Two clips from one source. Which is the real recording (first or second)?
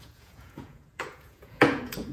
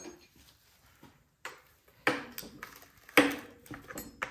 second